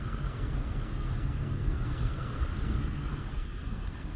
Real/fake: fake